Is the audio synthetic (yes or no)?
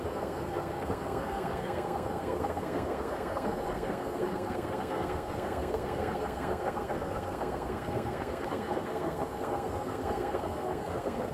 yes